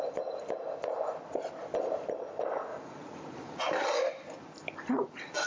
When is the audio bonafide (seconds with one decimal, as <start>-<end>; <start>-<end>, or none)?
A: 0.0-2.7; 3.7-5.5